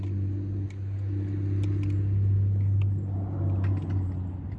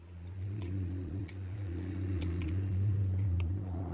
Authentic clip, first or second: first